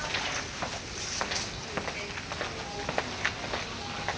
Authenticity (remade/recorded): recorded